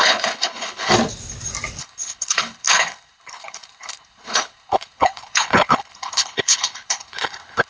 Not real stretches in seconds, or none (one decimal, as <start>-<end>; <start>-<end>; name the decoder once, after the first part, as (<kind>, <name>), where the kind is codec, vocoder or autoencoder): 0.0-0.9 (codec, HILCodec); 1.8-7.7